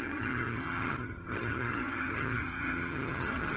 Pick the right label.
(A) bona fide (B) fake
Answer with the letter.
B